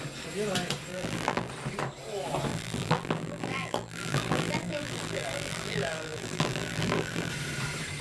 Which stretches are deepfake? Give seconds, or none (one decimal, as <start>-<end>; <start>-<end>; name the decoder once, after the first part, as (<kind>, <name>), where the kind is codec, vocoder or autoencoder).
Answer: 0.9-1.5 (vocoder, BigVGAN v2); 2.5-7.3